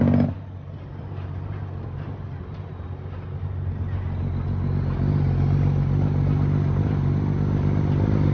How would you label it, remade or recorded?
recorded